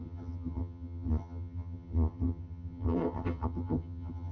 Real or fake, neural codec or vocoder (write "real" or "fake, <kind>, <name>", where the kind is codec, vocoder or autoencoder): fake, vocoder, HiFi-GAN